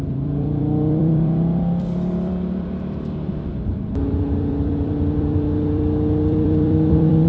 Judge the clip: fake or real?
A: fake